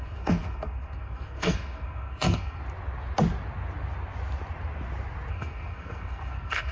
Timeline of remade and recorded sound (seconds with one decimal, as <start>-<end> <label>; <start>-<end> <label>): 0.0-2.6 remade; 2.6-5.3 recorded; 5.3-6.7 remade